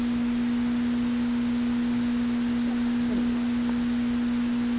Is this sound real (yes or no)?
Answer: yes